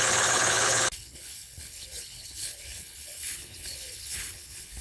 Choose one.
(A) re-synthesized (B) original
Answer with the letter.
A